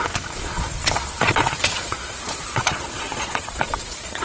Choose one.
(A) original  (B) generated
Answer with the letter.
B